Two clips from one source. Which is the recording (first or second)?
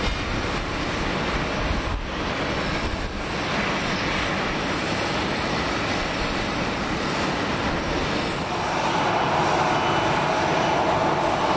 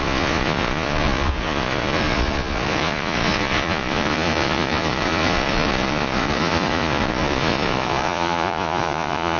first